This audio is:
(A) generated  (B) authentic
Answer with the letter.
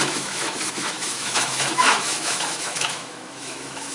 A